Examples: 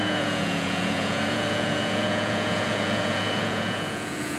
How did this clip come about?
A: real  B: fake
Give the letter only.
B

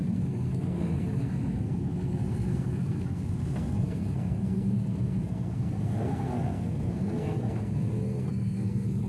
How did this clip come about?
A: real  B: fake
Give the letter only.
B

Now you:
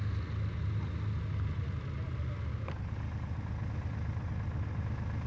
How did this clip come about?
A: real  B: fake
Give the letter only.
A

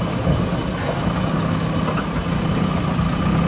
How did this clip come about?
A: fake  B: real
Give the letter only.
B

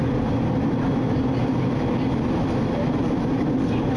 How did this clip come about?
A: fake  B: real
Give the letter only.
B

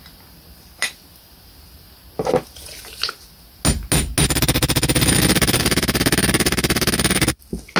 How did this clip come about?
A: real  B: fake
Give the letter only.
A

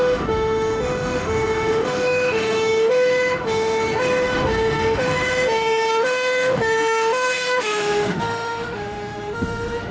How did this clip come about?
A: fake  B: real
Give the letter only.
A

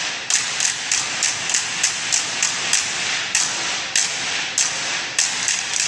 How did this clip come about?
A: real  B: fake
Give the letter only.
A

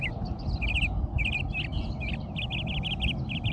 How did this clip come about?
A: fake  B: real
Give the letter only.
B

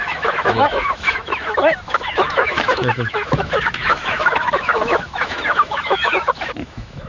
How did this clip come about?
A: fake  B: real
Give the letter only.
A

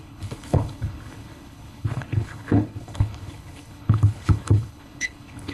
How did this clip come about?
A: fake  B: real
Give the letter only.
A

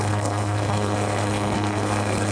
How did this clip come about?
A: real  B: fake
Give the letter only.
B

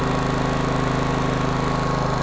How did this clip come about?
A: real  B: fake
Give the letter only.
A